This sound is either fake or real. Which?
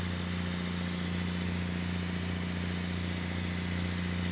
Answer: real